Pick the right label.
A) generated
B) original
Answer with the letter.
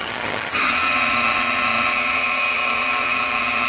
A